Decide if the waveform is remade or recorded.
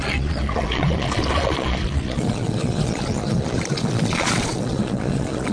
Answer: remade